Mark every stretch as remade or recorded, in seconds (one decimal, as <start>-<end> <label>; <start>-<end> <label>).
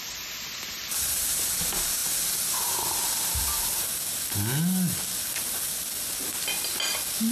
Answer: 0.0-7.3 recorded